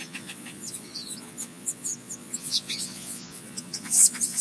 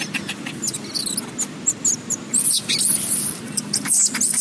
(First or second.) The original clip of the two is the second